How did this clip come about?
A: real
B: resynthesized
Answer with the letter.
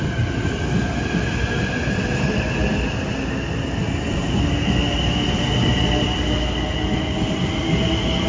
A